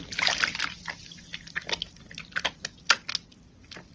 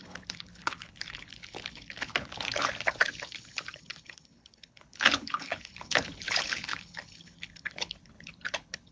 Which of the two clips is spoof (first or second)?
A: second